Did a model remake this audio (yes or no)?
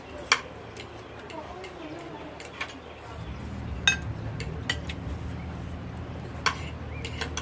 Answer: no